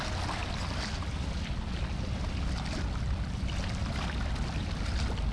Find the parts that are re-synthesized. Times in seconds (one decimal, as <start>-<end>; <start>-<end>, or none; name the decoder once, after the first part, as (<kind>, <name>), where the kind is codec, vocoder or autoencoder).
none